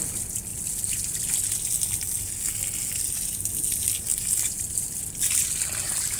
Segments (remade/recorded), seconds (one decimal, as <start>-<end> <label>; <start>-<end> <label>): 0.0-0.5 recorded; 0.5-1.3 remade; 1.3-4.1 recorded; 4.1-5.0 remade; 5.0-6.2 recorded